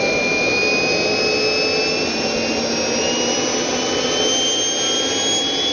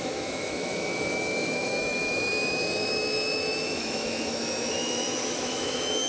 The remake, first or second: second